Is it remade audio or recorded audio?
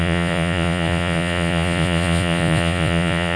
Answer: remade